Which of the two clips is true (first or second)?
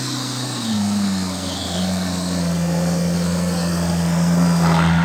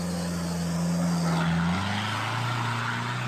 second